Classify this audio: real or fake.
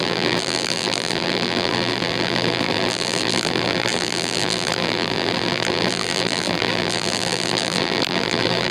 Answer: fake